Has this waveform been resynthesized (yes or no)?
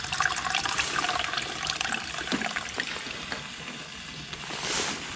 no